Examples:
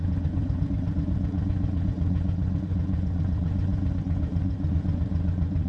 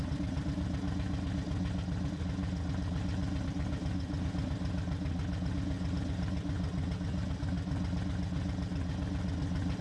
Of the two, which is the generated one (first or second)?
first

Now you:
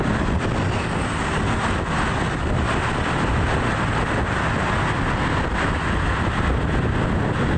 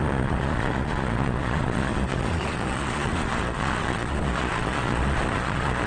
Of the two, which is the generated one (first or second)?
second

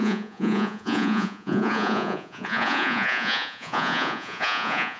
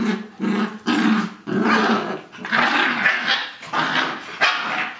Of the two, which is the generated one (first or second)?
first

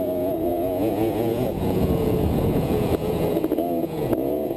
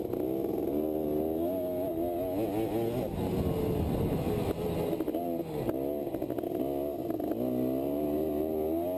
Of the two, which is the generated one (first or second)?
first